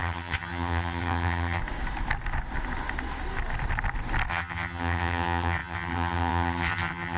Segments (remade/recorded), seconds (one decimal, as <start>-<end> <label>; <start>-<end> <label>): 0.0-1.6 remade; 1.6-4.3 recorded; 4.3-7.2 remade

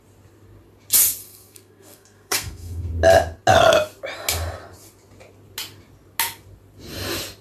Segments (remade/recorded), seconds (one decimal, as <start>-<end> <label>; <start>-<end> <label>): 0.0-1.2 recorded; 1.2-2.9 remade; 2.9-7.4 recorded

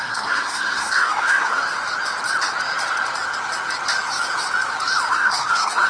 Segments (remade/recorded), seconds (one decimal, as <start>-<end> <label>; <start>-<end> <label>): 0.0-1.6 remade; 1.6-5.1 recorded; 5.1-5.9 remade